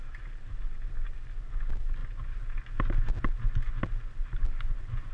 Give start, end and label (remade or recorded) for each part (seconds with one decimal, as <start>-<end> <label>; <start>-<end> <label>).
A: 0.0-5.1 recorded